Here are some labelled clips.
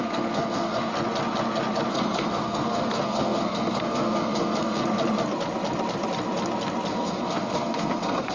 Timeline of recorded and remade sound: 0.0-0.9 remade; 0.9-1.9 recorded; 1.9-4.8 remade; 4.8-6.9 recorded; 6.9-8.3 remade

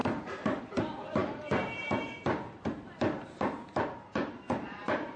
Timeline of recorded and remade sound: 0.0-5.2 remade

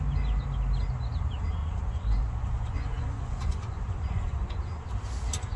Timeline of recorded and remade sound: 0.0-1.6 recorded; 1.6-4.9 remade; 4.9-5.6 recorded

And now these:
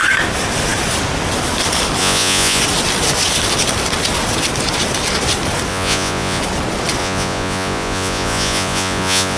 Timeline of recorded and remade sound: 0.0-2.0 recorded; 2.0-2.6 remade; 2.6-5.7 recorded; 5.7-6.4 remade; 6.4-7.0 recorded; 7.0-9.4 remade